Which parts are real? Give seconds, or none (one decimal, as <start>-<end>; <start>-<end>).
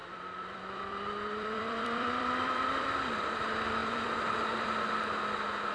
3.4-3.8; 4.9-5.7